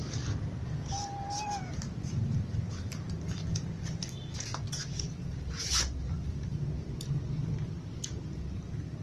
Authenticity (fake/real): real